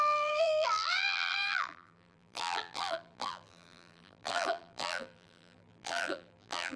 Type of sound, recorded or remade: remade